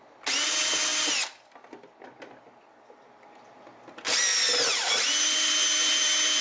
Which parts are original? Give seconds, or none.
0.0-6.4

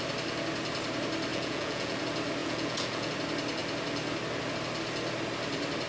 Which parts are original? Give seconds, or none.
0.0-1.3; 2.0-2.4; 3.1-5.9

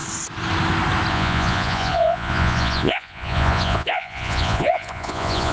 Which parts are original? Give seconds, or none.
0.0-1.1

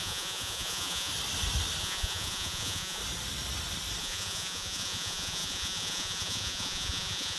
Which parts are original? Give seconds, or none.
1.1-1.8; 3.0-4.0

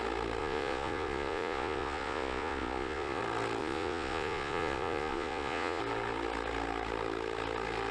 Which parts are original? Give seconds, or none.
0.0-0.4; 3.2-3.6; 5.8-7.9